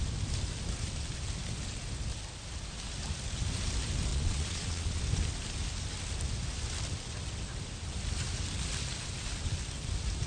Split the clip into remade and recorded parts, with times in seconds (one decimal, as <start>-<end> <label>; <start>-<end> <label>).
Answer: 0.0-4.1 recorded; 4.1-5.0 remade; 5.0-10.3 recorded